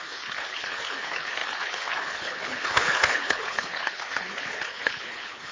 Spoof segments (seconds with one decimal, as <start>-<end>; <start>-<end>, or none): 0.0-5.5